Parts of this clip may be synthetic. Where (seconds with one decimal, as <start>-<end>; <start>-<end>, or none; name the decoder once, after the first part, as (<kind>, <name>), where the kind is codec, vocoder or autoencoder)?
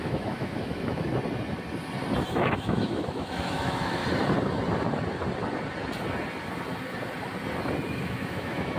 0.0-1.1 (autoencoder, DAC-VAE); 2.3-4.0; 7.9-8.8